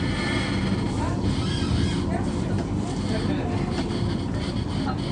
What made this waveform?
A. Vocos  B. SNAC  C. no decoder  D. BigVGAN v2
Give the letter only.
C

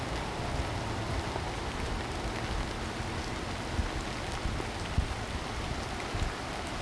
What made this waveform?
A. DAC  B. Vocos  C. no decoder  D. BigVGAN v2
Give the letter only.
C